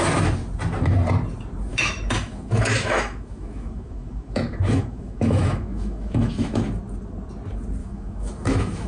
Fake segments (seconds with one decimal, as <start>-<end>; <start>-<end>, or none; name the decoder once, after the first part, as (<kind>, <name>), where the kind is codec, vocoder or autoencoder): 1.7-6.6 (autoencoder, DAC-VAE); 7.8-8.9